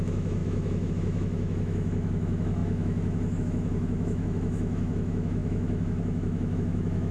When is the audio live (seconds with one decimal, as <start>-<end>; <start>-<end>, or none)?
none